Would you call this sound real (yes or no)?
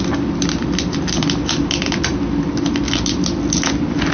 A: yes